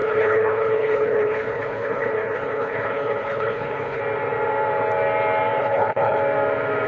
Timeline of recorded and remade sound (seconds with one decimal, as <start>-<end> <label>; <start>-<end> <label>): 0.0-4.0 remade; 4.0-5.6 recorded; 5.6-6.2 remade; 6.2-6.9 recorded